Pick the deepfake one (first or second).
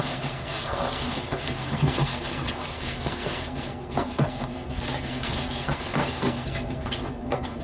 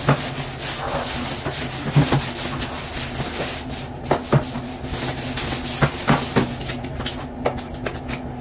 first